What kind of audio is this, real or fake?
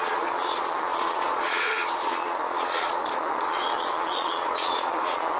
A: fake